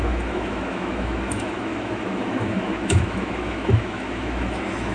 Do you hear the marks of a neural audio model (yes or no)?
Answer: yes